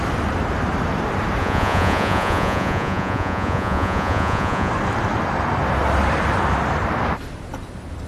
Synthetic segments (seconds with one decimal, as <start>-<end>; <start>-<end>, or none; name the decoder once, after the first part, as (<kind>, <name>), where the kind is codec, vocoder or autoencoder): 1.4-4.7 (vocoder, Vocos)